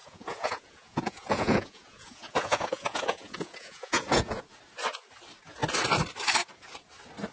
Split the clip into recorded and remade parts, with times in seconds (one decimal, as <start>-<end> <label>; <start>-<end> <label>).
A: 0.0-4.4 remade; 4.4-7.3 recorded